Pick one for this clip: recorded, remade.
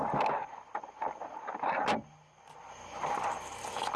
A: recorded